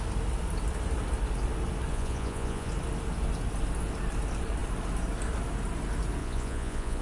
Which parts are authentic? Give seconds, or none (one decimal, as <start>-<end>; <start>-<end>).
0.0-1.9; 2.7-6.2